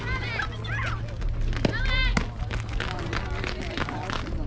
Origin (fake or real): real